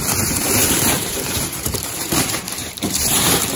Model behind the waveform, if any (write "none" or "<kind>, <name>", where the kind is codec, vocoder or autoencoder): vocoder, BigVGAN v2